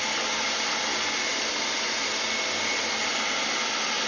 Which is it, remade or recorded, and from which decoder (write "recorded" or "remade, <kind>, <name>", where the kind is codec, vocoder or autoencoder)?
recorded